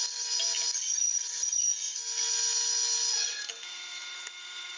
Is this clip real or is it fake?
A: real